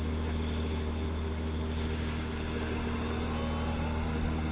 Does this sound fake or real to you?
real